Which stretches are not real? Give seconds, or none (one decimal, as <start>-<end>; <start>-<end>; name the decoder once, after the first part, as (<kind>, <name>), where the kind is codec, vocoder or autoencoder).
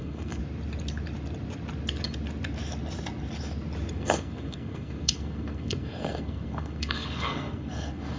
0.0-0.4 (codec, SNAC); 3.9-8.2